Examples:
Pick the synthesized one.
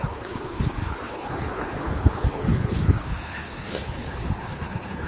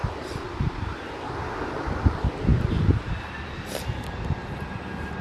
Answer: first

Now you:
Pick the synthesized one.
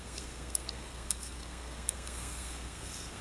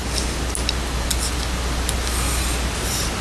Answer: first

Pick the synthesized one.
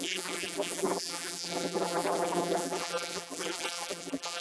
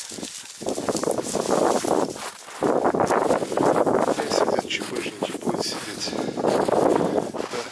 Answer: first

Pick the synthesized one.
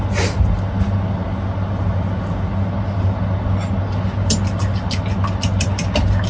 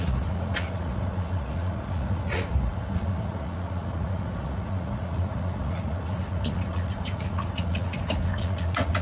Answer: second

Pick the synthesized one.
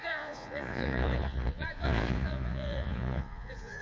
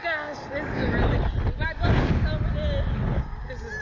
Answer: first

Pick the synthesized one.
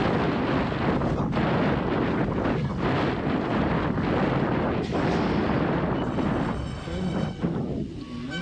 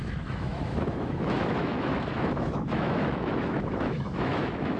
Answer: second